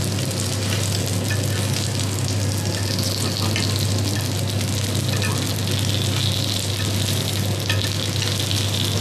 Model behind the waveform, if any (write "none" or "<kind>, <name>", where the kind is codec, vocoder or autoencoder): none